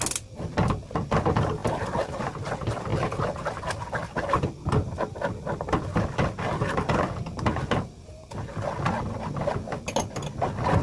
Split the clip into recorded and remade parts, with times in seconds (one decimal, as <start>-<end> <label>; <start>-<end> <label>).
0.0-10.8 recorded